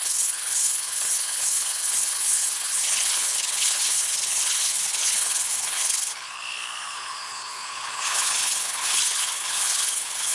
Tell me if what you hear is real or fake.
fake